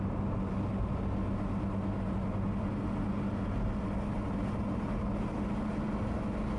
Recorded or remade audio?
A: recorded